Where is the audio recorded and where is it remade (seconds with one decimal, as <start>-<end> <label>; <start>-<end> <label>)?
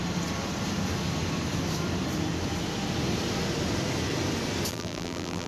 0.0-4.7 recorded; 4.7-5.5 remade